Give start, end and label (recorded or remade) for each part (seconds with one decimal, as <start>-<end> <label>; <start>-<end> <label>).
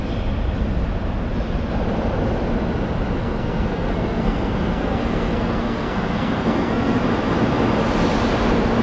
0.0-3.2 recorded; 3.2-7.0 remade; 7.0-8.8 recorded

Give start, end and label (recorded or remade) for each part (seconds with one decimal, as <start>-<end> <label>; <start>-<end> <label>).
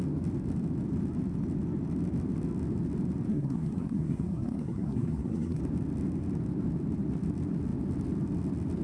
0.0-3.3 recorded; 3.3-5.6 remade; 5.6-8.8 recorded